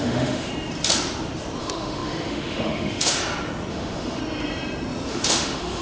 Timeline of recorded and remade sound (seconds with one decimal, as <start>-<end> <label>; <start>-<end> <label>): 0.0-0.5 remade; 0.5-1.6 recorded; 1.6-3.2 remade; 3.2-3.7 recorded; 3.7-4.2 remade; 4.2-5.1 recorded; 5.1-5.8 remade